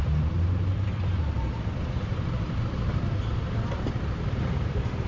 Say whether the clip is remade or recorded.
remade